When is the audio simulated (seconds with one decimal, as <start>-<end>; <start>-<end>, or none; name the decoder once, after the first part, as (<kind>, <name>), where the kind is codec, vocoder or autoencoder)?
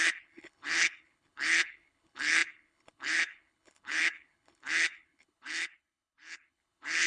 0.0-7.1 (codec, HILCodec)